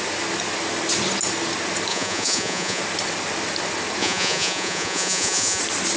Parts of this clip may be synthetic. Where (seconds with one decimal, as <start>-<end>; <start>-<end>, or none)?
1.9-2.8; 4.0-5.6